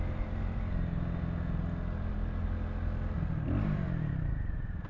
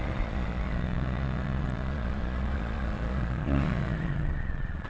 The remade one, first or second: second